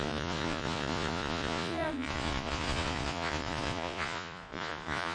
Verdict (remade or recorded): remade